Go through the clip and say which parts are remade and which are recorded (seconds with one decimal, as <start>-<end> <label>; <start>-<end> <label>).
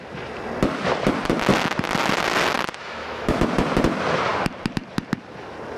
0.0-2.8 recorded; 2.8-3.4 remade; 3.4-5.8 recorded